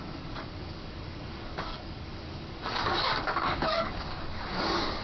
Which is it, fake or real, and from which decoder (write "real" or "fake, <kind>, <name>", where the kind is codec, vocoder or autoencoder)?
fake, codec, DAC